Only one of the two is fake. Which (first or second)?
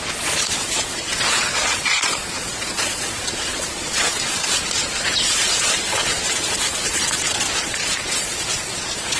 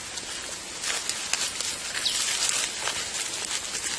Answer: first